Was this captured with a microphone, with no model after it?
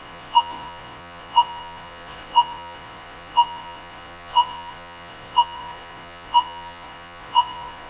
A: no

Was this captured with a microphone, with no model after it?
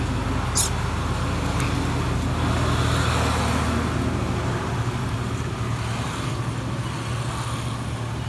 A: yes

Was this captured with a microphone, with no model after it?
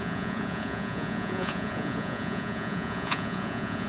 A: no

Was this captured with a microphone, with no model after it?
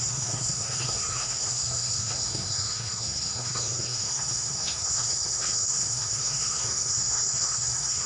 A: no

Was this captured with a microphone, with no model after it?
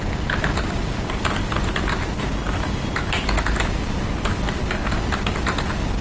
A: yes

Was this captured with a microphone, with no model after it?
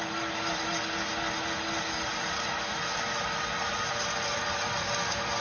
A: yes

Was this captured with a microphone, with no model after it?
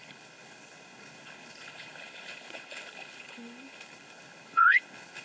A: no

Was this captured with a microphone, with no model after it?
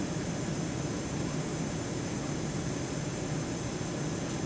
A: yes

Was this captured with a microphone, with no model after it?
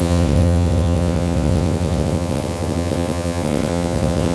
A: no